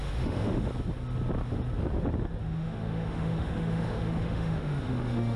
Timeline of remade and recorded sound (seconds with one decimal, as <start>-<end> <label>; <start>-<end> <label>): 0.0-0.7 remade; 0.7-2.4 recorded; 2.4-5.4 remade